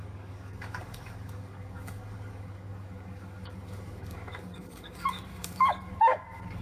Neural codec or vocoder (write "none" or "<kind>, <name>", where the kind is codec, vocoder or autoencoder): codec, DAC